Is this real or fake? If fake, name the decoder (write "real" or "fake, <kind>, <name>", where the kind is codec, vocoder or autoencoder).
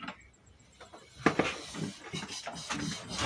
real